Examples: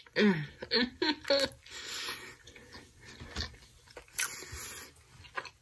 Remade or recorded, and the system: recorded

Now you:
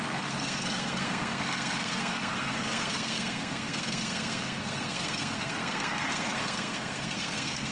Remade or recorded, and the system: remade, codec, SNAC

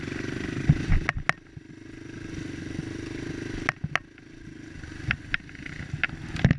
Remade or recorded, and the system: recorded